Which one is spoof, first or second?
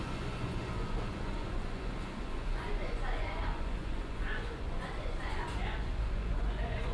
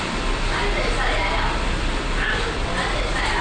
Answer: first